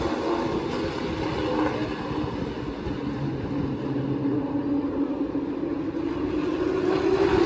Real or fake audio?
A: real